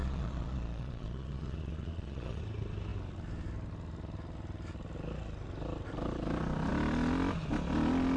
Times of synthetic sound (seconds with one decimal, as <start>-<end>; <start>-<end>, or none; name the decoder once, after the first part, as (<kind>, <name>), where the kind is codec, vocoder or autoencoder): 0.0-2.4 (vocoder, Vocos)